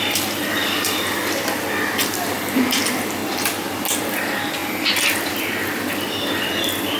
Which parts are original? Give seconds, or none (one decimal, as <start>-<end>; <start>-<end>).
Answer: 3.2-4.0; 4.6-5.2